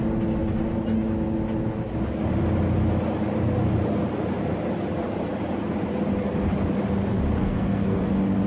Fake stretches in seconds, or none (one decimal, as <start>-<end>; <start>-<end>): 7.4-8.0